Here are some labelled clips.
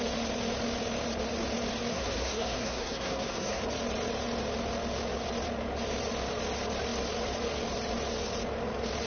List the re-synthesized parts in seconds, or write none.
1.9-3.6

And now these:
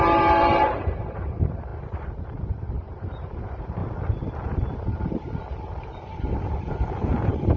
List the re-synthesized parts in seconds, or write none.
0.0-7.6